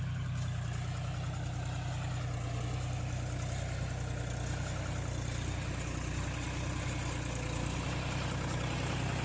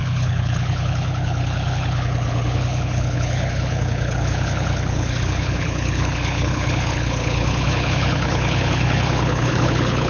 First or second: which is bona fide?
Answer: first